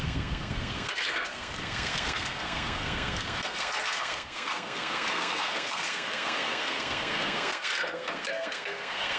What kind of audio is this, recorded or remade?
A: remade